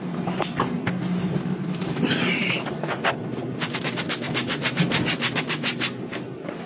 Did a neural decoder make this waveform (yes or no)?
no